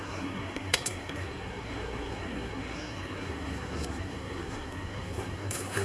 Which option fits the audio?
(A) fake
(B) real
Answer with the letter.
A